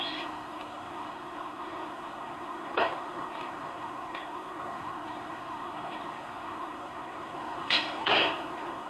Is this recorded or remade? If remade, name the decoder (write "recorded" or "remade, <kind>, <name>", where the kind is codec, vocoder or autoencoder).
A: remade, codec, SNAC